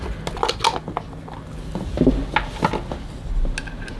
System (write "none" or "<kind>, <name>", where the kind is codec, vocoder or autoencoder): none